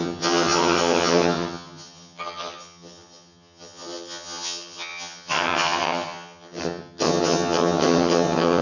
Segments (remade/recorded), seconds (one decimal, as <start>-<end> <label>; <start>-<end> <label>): 0.0-8.6 remade